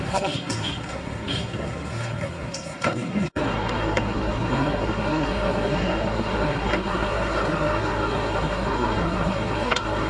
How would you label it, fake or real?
fake